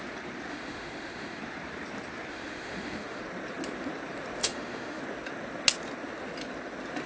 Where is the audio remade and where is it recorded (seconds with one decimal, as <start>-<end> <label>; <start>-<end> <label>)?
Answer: 0.0-0.5 recorded; 0.5-1.4 remade; 1.4-2.3 recorded; 2.3-3.2 remade; 3.2-4.4 recorded; 4.4-5.0 remade; 5.0-7.1 recorded